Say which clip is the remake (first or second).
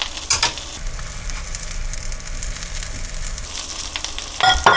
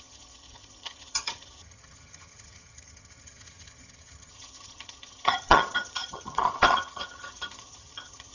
second